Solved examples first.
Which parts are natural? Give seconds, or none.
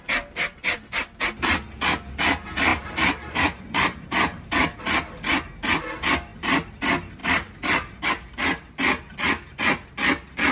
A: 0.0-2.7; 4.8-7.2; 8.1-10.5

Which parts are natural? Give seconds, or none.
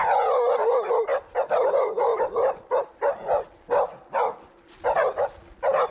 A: 0.0-5.9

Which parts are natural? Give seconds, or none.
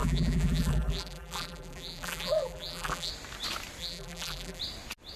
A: 3.1-3.8; 4.6-5.2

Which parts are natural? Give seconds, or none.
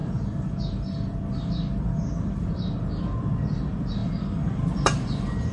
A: none